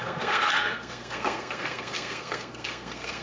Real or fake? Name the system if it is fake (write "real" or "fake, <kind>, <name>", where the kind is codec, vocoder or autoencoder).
fake, codec, SNAC